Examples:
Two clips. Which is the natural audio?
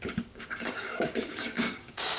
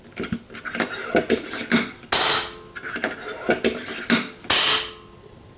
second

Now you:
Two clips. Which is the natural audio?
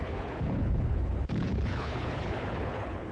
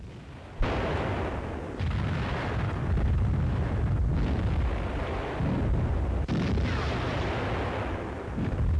second